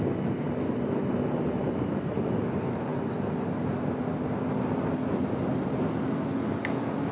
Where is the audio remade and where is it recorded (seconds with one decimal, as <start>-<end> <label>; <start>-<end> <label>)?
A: 0.0-7.1 recorded

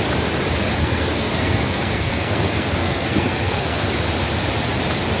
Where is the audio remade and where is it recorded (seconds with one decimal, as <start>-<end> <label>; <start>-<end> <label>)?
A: 0.0-0.8 recorded; 0.8-3.9 remade; 3.9-5.2 recorded

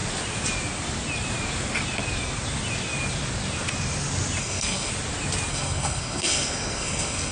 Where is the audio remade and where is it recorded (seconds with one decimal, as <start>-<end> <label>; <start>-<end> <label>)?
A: 0.0-4.4 recorded; 4.4-4.9 remade; 4.9-5.5 recorded; 5.5-7.3 remade

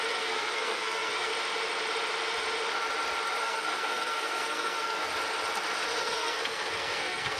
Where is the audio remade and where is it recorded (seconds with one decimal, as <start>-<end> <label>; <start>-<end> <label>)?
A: 0.0-1.3 remade; 1.3-3.4 recorded; 3.4-5.1 remade; 5.1-6.0 recorded; 6.0-7.4 remade

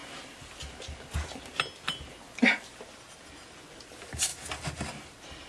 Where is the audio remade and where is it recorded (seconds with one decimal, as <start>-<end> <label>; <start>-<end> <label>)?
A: 0.0-5.5 recorded